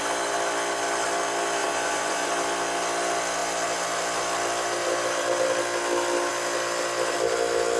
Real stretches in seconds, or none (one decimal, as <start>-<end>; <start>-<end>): 0.0-1.6; 2.3-7.8